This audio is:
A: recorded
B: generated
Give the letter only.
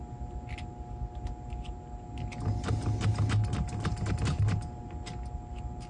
A